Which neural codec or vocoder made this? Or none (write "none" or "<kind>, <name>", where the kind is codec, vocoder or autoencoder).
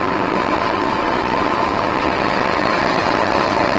vocoder, WaveNeXt